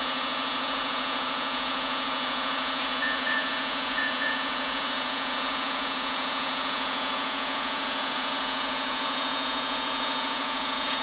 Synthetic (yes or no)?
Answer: yes